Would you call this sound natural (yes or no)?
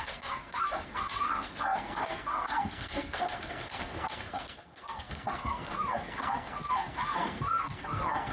no